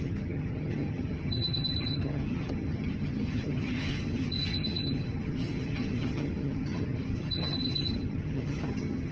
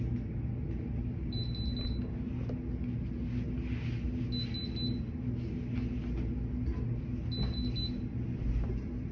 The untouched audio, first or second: second